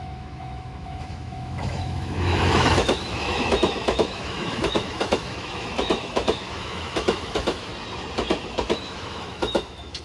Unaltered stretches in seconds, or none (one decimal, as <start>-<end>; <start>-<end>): 7.7-8.6